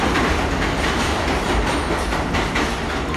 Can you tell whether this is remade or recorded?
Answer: recorded